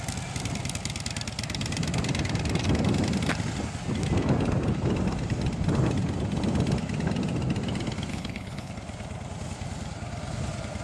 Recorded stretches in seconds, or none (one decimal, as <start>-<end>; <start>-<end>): 0.0-8.1; 8.7-10.8

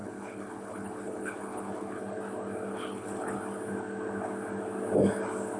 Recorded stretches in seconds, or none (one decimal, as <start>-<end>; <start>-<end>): 2.0-2.7; 3.4-5.6

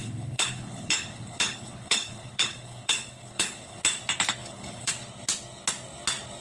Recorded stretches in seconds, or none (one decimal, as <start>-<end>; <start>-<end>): 3.8-4.4; 4.9-6.4

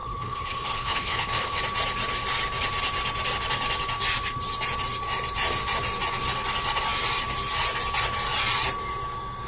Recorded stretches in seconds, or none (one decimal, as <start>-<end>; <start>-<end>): 1.6-9.5

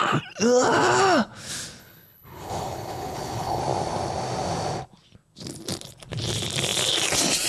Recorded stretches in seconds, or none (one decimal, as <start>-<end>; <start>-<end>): 0.0-1.8; 3.6-7.5

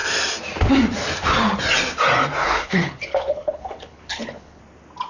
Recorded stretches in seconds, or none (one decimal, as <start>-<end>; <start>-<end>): 0.0-2.4; 4.6-5.1

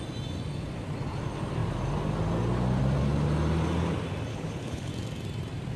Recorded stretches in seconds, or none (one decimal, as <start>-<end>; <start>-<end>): 0.0-4.3; 4.9-5.8